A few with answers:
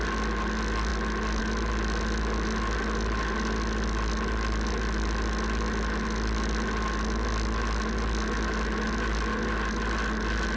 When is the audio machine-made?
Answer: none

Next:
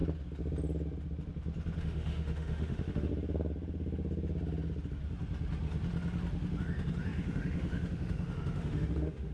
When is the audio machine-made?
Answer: 1.8-3.1 (autoencoder, DAC-VAE); 6.6-9.3

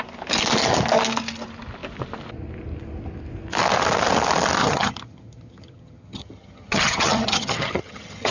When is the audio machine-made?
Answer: 4.6-8.3 (vocoder, HiFi-GAN)

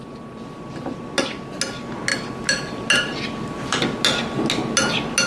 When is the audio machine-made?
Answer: none

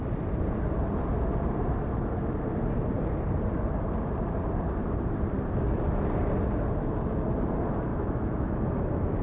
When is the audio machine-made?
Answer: 7.9-8.5 (autoencoder, DAC-VAE)

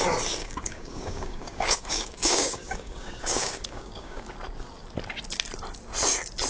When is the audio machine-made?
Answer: 0.4-4.3 (codec, DAC)